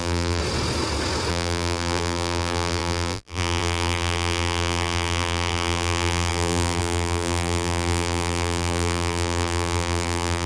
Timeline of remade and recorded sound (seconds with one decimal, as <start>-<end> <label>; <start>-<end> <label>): 0.0-0.4 remade; 0.4-1.3 recorded; 1.3-10.5 remade

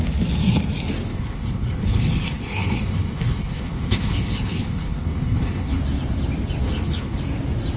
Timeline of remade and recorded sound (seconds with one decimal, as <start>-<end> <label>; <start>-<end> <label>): 0.0-1.1 recorded; 1.1-5.8 remade; 5.8-6.6 recorded; 6.6-7.2 remade; 7.2-7.8 recorded

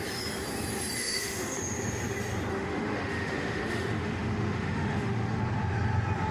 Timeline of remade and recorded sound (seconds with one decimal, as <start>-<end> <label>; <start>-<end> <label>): 0.0-1.0 recorded; 1.0-1.6 remade; 1.6-2.5 recorded; 2.5-5.4 remade; 5.4-6.3 recorded

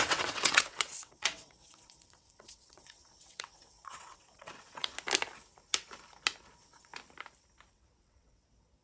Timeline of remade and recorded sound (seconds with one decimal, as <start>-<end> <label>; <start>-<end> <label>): 0.0-4.9 remade; 4.9-6.5 recorded; 6.5-6.9 remade; 6.9-7.7 recorded; 7.7-8.8 remade

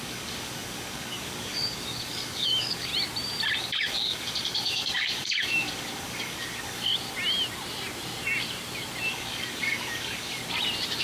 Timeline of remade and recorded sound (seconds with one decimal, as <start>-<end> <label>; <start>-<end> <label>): 0.0-2.9 remade; 2.9-3.6 recorded; 3.6-6.9 remade; 6.9-9.1 recorded; 9.1-10.4 remade; 10.4-11.0 recorded

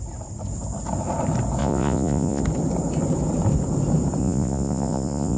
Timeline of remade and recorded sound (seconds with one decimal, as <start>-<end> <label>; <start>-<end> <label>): 0.0-1.6 recorded; 1.6-2.4 remade; 2.4-4.2 recorded; 4.2-5.4 remade

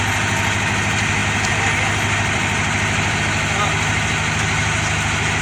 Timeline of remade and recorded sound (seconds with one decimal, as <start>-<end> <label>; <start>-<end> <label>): 0.0-5.4 recorded